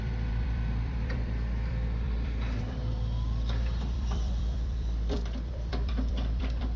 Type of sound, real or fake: fake